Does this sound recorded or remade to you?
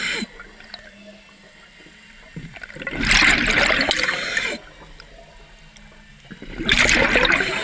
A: recorded